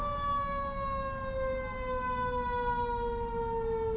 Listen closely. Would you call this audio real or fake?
real